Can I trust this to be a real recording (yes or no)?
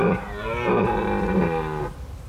yes